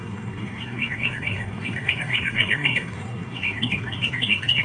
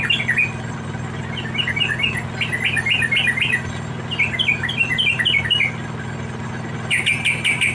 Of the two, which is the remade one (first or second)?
first